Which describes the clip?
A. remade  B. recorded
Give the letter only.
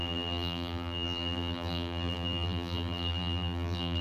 A